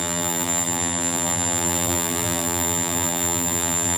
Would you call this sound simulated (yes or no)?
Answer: yes